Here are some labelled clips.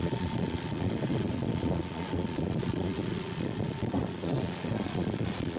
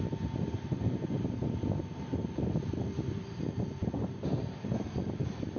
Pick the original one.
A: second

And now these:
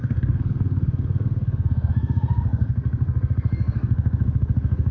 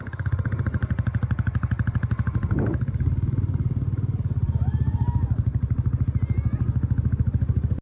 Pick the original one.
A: second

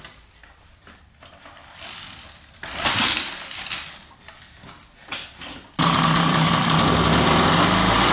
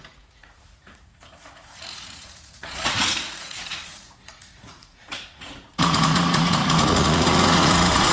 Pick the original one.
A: first